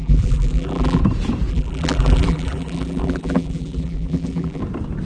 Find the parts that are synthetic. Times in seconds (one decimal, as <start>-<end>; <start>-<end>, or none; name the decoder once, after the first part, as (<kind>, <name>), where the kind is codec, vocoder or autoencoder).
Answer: 0.0-1.0 (vocoder, BigVGAN v2); 1.5-4.6